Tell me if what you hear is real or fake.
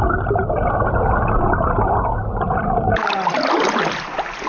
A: real